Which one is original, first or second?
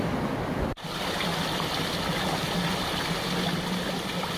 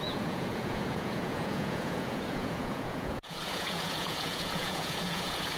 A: first